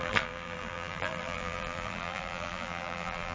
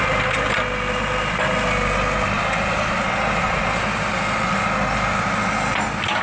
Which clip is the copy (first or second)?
first